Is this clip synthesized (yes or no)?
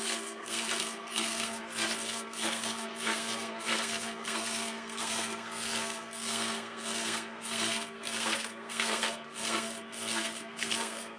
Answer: yes